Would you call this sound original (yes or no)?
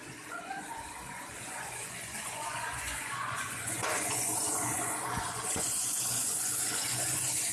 no